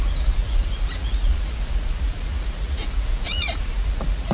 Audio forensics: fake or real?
fake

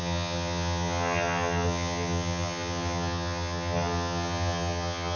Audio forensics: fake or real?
fake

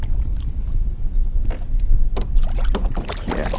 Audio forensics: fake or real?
real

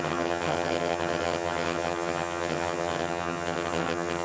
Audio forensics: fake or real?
fake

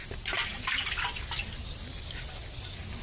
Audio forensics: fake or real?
real